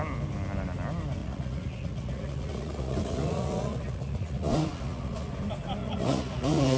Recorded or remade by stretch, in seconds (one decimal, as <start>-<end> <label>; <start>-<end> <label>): 0.0-1.2 recorded; 1.2-5.3 remade; 5.3-5.8 recorded; 5.8-6.8 remade